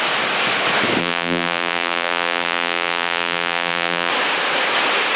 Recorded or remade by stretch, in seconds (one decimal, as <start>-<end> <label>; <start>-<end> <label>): 0.0-1.0 recorded; 1.0-4.1 remade; 4.1-5.2 recorded